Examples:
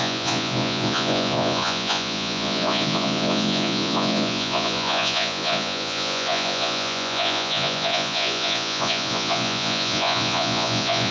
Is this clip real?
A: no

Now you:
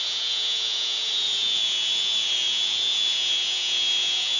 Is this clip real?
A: no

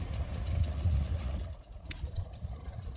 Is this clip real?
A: no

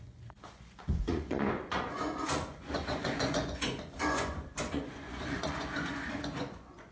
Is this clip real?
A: no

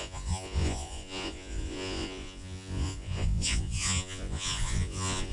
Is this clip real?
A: no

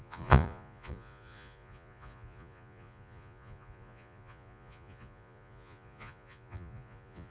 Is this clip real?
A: no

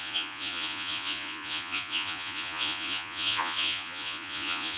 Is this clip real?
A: no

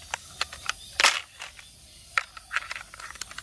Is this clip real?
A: yes